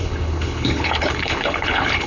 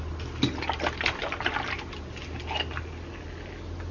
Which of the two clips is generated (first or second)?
first